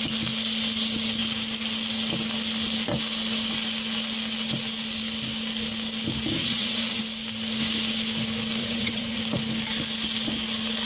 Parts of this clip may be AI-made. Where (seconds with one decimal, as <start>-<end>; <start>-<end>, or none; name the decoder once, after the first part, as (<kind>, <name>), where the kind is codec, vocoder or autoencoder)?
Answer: 6.4-7.0 (vocoder, WaveNeXt); 8.6-9.2